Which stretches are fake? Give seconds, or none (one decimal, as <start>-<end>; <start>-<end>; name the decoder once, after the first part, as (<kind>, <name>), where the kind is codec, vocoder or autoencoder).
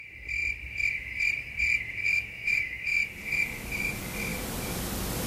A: 2.1-3.0 (autoencoder, DAC-VAE)